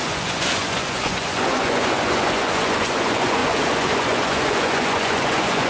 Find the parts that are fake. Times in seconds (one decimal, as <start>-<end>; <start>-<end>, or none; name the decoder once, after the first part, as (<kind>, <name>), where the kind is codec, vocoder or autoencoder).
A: 0.0-5.7 (vocoder, Vocos)

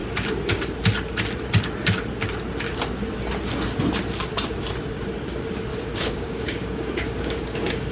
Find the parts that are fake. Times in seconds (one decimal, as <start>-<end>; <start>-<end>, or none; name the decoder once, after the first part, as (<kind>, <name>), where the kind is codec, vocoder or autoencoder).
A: 5.7-7.9 (codec, DAC)

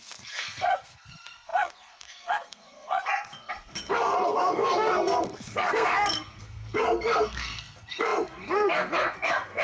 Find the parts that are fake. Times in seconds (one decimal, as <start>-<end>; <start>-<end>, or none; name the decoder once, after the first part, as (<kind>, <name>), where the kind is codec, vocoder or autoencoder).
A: 0.0-9.6 (codec, SNAC)

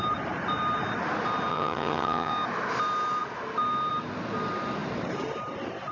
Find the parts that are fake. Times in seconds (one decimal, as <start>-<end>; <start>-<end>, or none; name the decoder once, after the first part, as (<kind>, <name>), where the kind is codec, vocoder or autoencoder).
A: 1.5-2.3 (vocoder, HiFi-GAN)

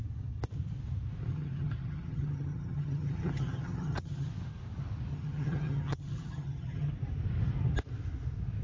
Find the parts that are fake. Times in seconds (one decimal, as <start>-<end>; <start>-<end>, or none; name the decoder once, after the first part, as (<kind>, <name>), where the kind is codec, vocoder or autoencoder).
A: 1.3-4.3 (vocoder, HiFi-GAN); 5.1-6.9

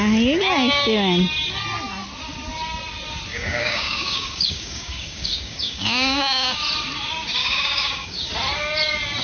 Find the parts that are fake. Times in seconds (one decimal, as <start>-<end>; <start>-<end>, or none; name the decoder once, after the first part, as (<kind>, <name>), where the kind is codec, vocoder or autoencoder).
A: 3.3-6.6 (codec, DAC); 7.4-8.3

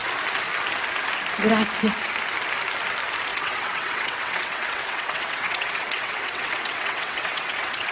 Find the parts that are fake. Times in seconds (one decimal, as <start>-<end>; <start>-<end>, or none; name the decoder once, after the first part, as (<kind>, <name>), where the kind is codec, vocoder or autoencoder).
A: 3.3-7.9 (vocoder, WaveNeXt)

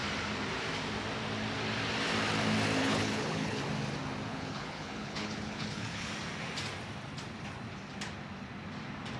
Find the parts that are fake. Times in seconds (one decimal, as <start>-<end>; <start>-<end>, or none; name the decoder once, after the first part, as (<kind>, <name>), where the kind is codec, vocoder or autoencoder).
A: 2.8-3.6 (codec, HILCodec); 4.3-6.1